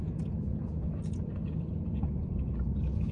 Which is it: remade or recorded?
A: remade